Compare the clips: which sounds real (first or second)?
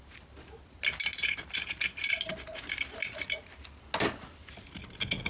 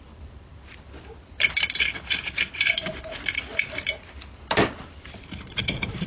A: first